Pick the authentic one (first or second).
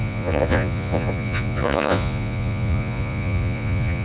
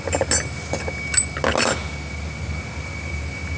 second